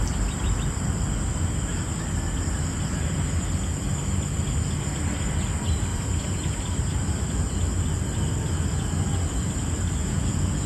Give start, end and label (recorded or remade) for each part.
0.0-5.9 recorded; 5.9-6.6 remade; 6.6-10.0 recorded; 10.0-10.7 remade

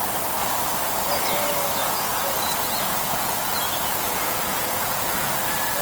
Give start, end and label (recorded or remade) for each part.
0.0-1.8 recorded; 1.8-5.3 remade; 5.3-5.8 recorded

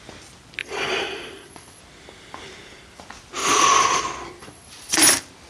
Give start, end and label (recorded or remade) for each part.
0.0-0.6 recorded; 0.6-1.8 remade; 1.8-3.4 recorded; 3.4-4.0 remade; 4.0-4.4 recorded; 4.4-5.0 remade; 5.0-5.5 recorded

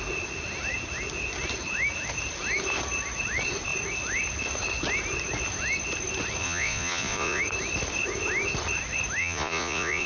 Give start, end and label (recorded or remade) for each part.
0.0-6.4 recorded; 6.4-7.4 remade; 7.4-9.2 recorded; 9.2-10.1 remade

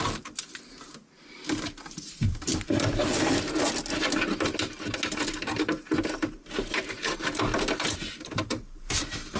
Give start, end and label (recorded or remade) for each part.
0.0-9.4 recorded